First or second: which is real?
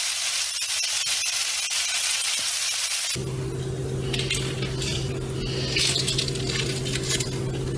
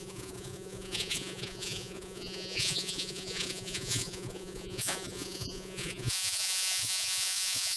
first